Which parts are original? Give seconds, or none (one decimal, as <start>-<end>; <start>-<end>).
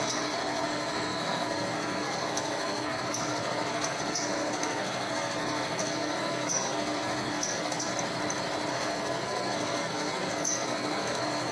7.9-8.7